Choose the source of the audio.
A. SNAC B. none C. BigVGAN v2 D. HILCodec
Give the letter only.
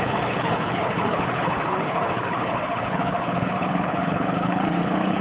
D